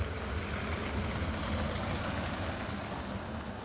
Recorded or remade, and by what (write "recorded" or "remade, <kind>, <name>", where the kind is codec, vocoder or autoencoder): recorded